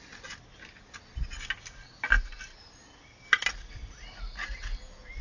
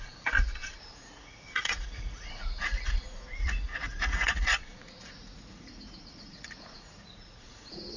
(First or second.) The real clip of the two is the first